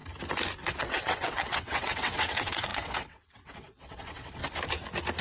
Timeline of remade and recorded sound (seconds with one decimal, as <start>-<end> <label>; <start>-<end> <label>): 0.0-0.8 recorded; 0.8-4.4 remade; 4.4-5.2 recorded